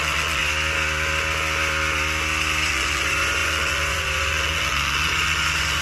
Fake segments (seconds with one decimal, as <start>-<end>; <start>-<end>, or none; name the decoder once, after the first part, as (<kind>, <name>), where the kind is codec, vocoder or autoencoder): 0.0-0.4 (vocoder, Vocos); 2.7-5.8